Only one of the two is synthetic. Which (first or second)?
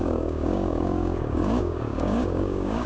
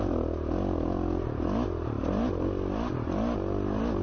first